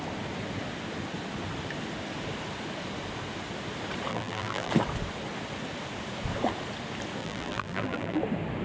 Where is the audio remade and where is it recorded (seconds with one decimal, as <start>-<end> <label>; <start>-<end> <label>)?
0.0-4.1 recorded; 4.1-4.7 remade; 4.7-7.2 recorded; 7.2-8.2 remade; 8.2-8.6 recorded